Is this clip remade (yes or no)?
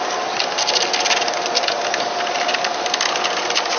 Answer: no